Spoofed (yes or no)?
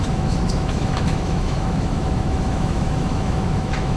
yes